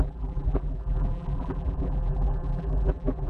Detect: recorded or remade remade